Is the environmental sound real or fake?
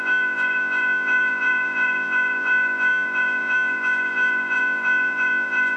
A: fake